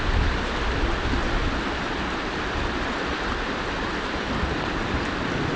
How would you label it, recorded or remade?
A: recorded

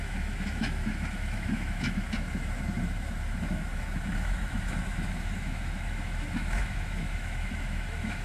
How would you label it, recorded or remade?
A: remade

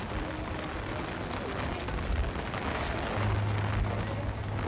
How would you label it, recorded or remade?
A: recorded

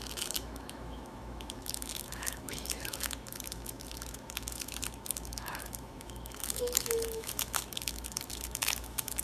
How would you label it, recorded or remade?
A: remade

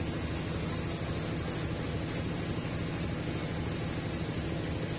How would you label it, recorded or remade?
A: recorded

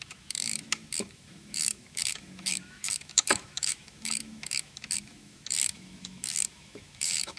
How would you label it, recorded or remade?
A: remade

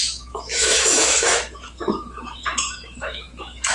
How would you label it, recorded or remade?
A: remade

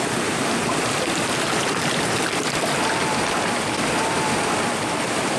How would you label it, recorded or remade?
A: recorded